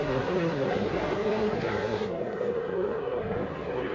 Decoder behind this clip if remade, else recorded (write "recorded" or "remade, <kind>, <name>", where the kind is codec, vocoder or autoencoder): remade, codec, SNAC